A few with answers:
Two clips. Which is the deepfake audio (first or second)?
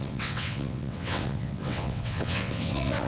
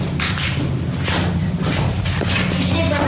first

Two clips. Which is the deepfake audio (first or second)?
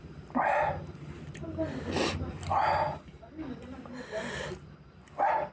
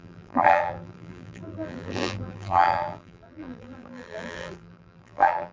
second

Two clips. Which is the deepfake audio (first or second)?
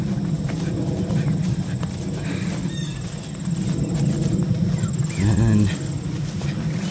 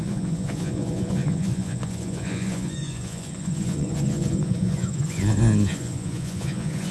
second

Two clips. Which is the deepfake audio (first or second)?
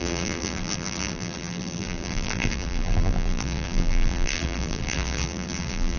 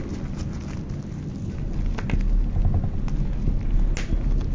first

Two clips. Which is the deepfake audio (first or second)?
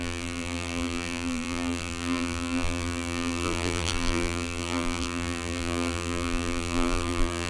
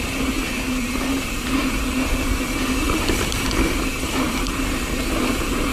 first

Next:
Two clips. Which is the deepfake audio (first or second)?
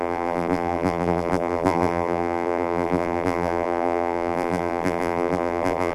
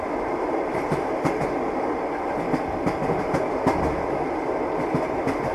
first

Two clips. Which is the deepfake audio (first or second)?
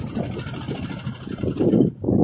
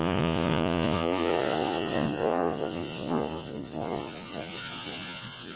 second